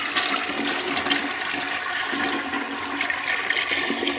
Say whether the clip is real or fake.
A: real